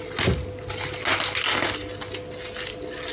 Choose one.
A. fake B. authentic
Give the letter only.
B